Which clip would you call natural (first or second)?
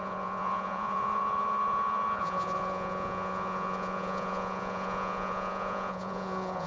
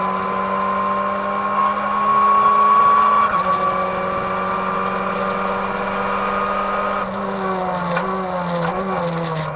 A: second